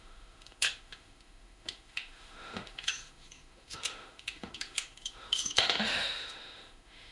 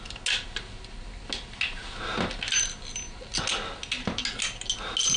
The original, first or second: second